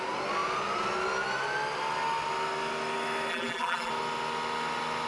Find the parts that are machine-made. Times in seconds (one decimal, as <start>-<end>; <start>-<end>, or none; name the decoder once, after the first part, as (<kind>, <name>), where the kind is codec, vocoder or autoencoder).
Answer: 3.3-3.9 (vocoder, BigVGAN v2)